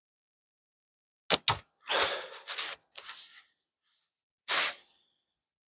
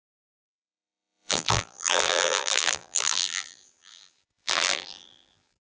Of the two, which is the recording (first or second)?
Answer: first